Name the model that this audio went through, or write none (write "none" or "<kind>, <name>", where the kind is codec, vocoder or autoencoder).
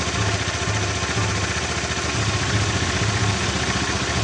none